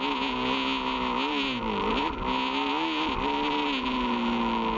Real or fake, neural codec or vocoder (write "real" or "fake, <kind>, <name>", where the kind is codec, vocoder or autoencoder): real